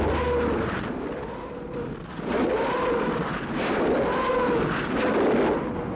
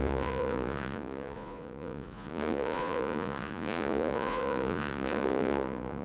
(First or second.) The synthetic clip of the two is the second